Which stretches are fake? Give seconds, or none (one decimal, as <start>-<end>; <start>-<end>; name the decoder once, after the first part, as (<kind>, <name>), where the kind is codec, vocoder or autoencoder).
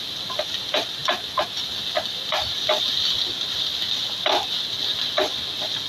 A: none